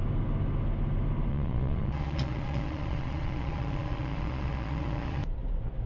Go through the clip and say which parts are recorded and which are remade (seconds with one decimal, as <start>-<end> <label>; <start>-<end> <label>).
0.0-1.3 recorded; 1.3-5.2 remade; 5.2-5.9 recorded